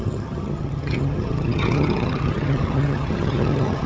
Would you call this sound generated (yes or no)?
yes